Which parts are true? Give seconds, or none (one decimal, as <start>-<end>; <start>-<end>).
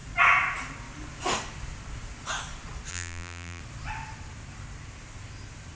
0.0-2.9; 3.6-5.8